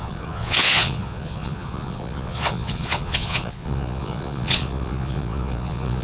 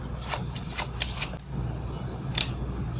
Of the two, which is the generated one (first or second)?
first